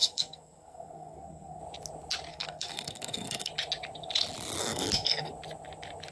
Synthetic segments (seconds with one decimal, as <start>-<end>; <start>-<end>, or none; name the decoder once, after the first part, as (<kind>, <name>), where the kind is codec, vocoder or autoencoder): 0.0-1.6 (codec, SNAC); 2.3-3.5; 4.6-5.3